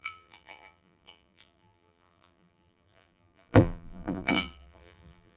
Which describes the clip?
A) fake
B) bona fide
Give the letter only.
A